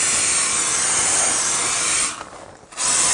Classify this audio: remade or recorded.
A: recorded